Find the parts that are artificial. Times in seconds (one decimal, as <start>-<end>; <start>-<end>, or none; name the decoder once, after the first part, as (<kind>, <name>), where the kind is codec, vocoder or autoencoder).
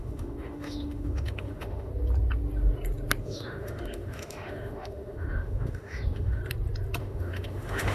0.0-1.9 (autoencoder, DAC-VAE); 3.2-6.4; 7.0-7.9